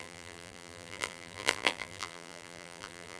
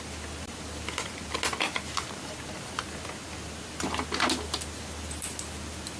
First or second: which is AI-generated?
first